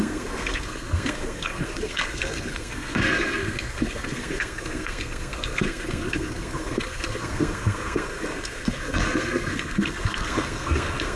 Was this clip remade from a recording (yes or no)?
yes